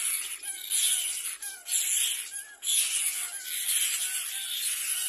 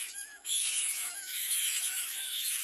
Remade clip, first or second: second